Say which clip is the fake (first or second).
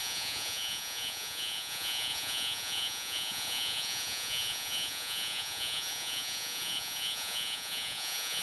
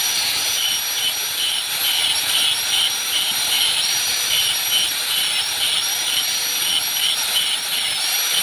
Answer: first